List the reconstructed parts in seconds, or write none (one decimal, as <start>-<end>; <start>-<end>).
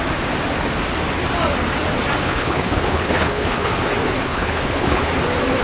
2.2-3.7; 4.2-5.0